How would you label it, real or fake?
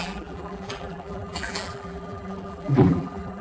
fake